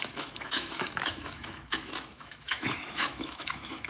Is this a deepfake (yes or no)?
yes